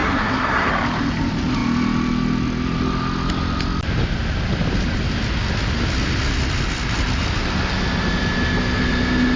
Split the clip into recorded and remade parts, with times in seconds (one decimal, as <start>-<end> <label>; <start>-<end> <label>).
0.0-0.7 remade; 0.7-9.4 recorded